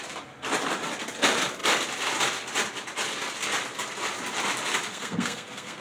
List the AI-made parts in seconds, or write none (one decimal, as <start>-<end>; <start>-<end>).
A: 4.9-5.8